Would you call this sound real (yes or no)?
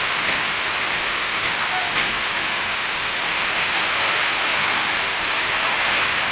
no